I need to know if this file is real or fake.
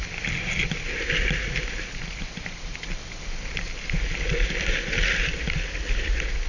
real